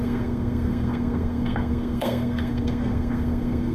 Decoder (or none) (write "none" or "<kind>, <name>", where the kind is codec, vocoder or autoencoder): codec, SNAC